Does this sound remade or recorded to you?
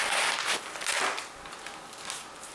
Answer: recorded